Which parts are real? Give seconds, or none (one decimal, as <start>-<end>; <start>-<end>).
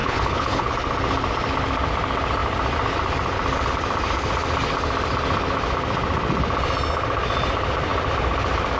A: 0.7-8.8